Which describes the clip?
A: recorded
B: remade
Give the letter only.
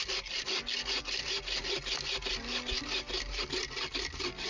A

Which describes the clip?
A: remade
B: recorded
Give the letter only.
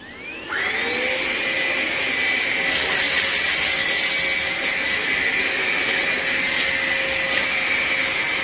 B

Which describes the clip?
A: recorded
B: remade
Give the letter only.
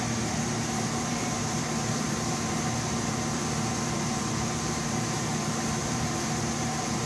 B